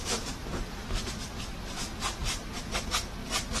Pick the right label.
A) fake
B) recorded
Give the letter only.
B